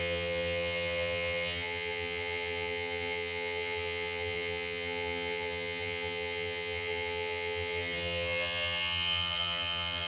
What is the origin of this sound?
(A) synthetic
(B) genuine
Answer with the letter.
A